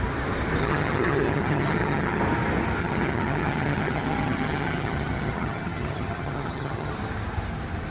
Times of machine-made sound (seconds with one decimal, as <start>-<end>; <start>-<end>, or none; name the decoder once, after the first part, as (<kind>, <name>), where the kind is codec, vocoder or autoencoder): 0.6-2.2 (vocoder, HiFi-GAN); 2.8-6.9